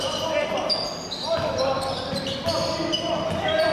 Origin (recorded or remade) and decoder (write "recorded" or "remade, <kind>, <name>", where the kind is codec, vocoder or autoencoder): recorded